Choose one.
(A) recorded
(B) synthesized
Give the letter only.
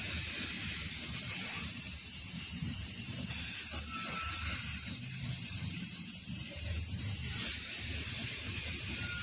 B